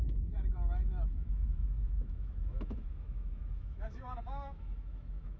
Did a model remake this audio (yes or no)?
yes